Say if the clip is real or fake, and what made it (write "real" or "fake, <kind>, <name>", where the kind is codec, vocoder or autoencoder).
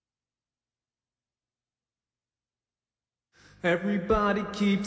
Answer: real